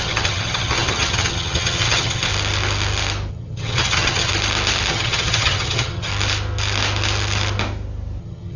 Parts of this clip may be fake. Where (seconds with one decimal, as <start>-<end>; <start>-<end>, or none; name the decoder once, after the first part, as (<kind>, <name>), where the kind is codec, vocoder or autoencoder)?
0.0-2.3 (vocoder, HiFi-GAN); 3.3-4.3; 4.9-6.1; 8.2-8.6